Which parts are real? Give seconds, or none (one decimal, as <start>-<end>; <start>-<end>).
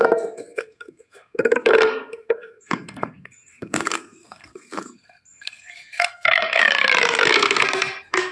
6.6-7.2